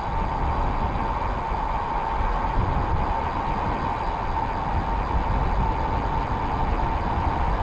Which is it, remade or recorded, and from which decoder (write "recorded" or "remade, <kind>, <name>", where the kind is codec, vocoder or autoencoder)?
recorded